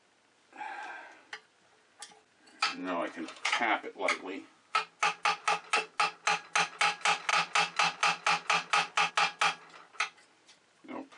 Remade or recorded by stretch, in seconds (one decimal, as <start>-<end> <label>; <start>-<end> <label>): 0.0-2.7 recorded; 2.7-4.0 remade; 4.0-11.2 recorded